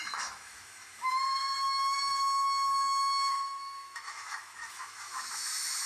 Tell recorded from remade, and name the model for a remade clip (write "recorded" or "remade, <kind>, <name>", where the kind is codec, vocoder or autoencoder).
remade, autoencoder, DAC-VAE